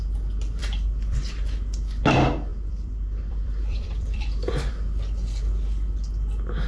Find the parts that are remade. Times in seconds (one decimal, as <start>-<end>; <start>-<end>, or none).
0.6-1.2; 2.5-4.7

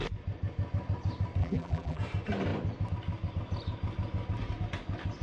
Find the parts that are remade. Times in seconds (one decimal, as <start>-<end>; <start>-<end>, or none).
1.4-2.0